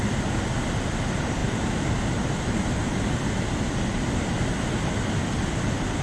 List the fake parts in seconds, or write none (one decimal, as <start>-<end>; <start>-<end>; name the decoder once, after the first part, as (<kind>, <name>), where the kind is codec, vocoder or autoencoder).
none